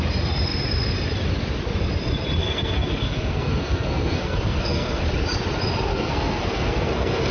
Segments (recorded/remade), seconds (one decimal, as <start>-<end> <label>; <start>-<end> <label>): 0.0-2.4 recorded; 2.4-5.0 remade; 5.0-5.9 recorded; 5.9-7.3 remade